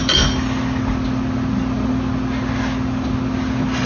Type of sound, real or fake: real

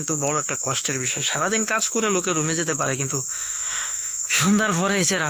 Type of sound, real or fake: fake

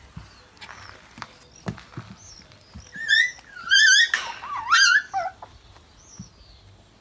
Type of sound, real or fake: real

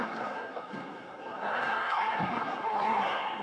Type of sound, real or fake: fake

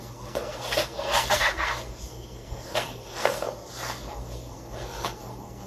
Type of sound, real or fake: fake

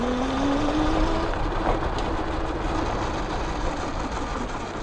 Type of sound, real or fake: real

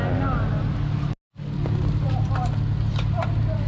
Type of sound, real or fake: real